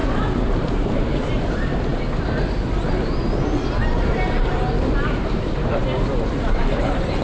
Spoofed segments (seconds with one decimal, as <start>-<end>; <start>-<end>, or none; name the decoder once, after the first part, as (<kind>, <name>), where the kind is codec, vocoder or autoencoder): 0.5-1.9 (vocoder, BigVGAN v2); 5.2-5.8; 6.3-7.2